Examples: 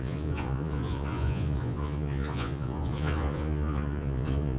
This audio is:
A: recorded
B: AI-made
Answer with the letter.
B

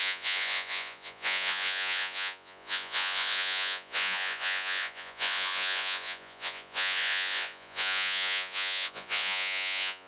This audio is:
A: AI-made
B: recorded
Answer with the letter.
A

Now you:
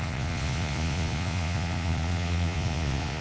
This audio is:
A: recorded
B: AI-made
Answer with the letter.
B